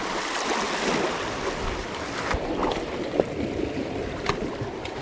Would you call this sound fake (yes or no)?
no